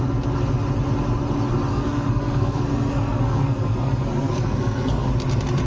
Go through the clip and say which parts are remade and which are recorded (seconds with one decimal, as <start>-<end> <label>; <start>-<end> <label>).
0.0-1.7 recorded; 1.7-5.1 remade; 5.1-5.7 recorded